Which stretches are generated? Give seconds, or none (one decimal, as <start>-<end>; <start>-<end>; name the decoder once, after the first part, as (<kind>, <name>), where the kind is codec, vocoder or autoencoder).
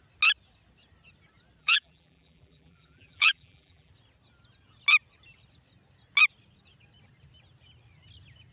1.6-3.9 (vocoder, BigVGAN v2)